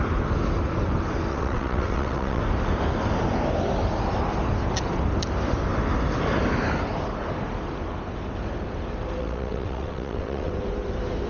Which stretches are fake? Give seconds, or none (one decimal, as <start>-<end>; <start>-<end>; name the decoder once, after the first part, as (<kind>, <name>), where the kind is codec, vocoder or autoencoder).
1.3-2.4 (vocoder, WaveNeXt); 9.2-10.5

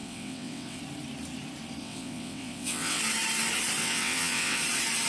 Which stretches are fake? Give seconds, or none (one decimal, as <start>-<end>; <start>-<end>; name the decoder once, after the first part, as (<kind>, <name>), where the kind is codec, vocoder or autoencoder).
0.0-0.8 (vocoder, WaveNeXt); 1.8-3.0; 3.8-4.6

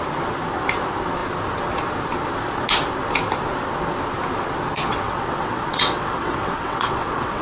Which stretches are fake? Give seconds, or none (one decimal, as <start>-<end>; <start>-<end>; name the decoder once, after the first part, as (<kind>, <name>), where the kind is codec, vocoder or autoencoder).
4.9-7.4 (vocoder, WaveNeXt)

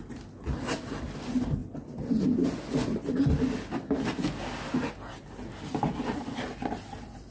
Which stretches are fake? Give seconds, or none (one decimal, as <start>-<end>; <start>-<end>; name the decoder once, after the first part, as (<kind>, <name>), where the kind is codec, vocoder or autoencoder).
none

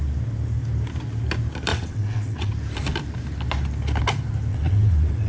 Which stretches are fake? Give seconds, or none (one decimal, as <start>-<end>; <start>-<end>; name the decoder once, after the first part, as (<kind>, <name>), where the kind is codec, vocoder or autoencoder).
1.7-2.5 (vocoder, WaveNeXt); 4.5-5.3

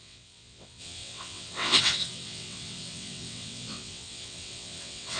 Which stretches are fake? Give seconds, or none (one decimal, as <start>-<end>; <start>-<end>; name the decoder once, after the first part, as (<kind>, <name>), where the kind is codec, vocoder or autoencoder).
0.0-5.2 (vocoder, WaveNeXt)

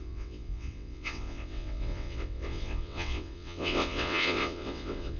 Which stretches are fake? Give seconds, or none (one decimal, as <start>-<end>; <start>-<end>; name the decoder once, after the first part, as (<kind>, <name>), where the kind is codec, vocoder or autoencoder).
0.0-5.2 (vocoder, WaveNeXt)

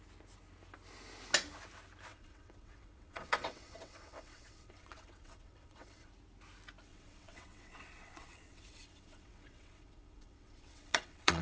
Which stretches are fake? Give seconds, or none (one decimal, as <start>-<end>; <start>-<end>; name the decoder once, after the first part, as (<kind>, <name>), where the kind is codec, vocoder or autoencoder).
2.1-6.1 (vocoder, WaveNeXt); 6.9-11.4